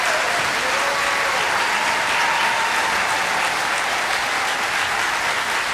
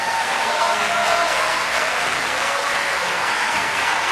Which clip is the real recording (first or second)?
first